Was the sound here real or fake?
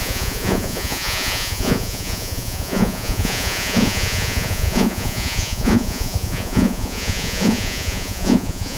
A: fake